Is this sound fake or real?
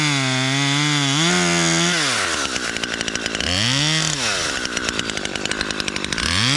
real